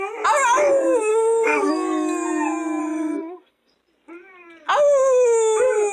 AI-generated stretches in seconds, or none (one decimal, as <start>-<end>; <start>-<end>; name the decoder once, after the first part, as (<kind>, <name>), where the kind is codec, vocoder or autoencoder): 1.1-1.7 (codec, SNAC); 2.8-3.7